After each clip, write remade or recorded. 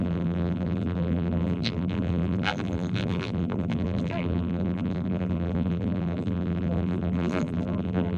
remade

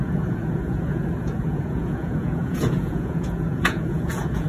remade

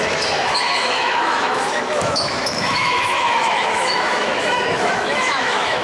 remade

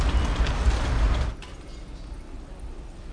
recorded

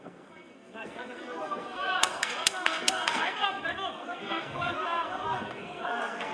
remade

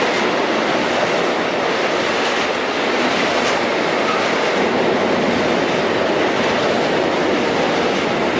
recorded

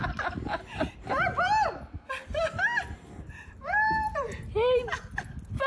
recorded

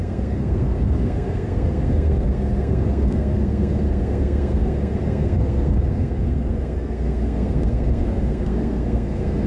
remade